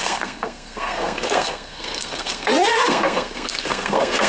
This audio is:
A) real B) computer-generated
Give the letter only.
B